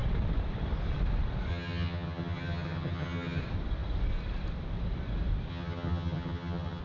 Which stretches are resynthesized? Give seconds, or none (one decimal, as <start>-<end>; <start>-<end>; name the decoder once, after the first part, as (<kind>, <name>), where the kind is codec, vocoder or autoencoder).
1.5-3.4 (vocoder, HiFi-GAN); 5.5-6.8